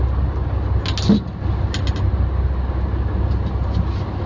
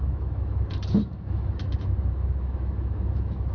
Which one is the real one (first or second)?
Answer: first